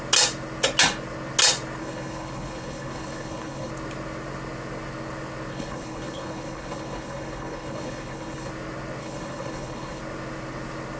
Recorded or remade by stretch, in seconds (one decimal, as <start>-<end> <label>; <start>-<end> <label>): 0.0-1.8 recorded; 1.8-3.7 remade; 3.7-5.5 recorded; 5.5-8.5 remade; 8.5-9.0 recorded; 9.0-10.0 remade; 10.0-11.0 recorded